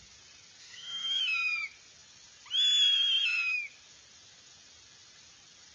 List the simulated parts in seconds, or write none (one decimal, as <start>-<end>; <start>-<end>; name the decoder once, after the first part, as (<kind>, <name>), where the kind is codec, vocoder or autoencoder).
0.6-1.2 (autoencoder, DAC-VAE)